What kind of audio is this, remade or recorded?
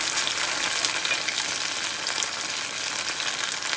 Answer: recorded